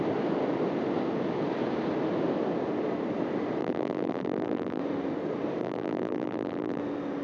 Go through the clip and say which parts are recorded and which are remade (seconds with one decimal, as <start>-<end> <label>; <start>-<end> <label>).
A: 0.0-3.6 recorded; 3.6-4.8 remade; 4.8-5.6 recorded; 5.6-6.8 remade; 6.8-7.2 recorded